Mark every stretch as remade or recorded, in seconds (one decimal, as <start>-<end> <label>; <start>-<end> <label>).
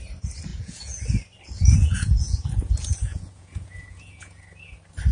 0.0-0.5 recorded; 0.5-1.0 remade; 1.0-1.8 recorded; 1.8-4.4 remade; 4.4-5.1 recorded